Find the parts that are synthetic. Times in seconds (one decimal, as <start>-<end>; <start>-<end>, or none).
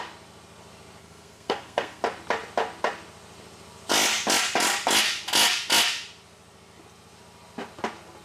1.0-2.0